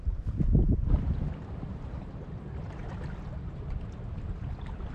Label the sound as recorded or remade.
recorded